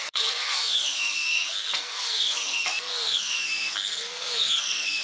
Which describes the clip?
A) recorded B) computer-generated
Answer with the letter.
B